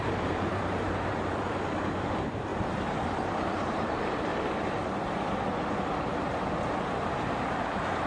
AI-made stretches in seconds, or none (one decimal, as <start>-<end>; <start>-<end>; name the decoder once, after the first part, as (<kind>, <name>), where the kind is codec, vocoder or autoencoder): 0.0-4.3 (vocoder, BigVGAN v2); 7.4-8.1